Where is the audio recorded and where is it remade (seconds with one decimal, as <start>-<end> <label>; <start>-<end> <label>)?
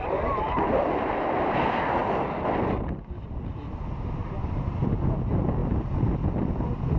0.0-7.0 recorded